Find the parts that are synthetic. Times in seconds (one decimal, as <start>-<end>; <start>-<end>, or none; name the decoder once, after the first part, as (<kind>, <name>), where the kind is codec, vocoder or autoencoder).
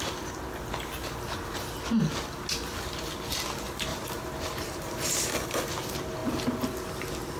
3.9-5.6 (vocoder, BigVGAN v2)